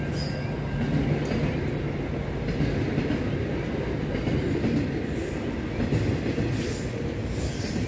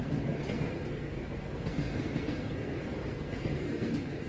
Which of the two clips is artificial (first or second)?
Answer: second